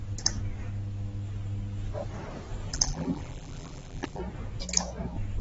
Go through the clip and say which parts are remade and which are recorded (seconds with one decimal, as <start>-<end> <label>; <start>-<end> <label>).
0.0-2.7 recorded; 2.7-4.2 remade; 4.2-5.4 recorded